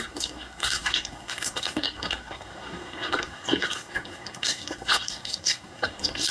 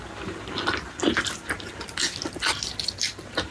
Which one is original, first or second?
second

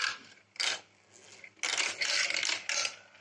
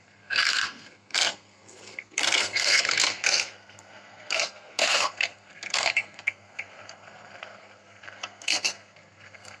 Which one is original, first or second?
first